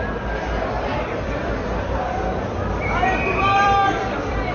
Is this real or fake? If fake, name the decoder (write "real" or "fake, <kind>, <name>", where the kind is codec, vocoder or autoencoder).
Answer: fake, vocoder, BigVGAN v2